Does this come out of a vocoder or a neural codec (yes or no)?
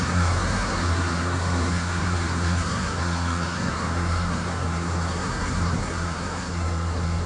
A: yes